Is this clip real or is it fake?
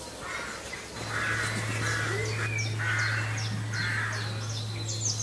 real